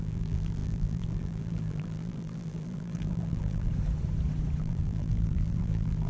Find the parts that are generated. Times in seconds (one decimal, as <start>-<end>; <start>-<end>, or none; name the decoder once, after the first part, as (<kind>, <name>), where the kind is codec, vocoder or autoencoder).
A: 0.0-3.7 (vocoder, BigVGAN v2); 4.6-6.1